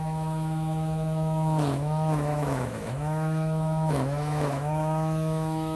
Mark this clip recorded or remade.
remade